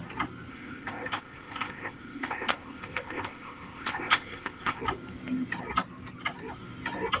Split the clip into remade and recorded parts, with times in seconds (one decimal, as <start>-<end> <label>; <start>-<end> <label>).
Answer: 0.0-0.5 recorded; 0.5-4.8 remade; 4.8-7.2 recorded